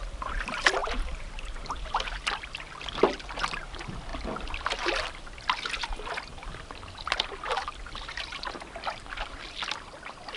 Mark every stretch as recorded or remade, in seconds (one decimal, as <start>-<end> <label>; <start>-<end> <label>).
0.0-0.8 recorded; 0.8-1.6 remade; 1.6-10.4 recorded